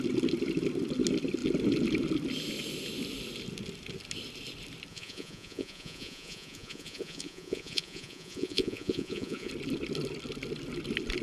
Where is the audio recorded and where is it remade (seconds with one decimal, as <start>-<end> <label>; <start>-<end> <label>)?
0.0-4.9 recorded; 4.9-9.5 remade; 9.5-11.2 recorded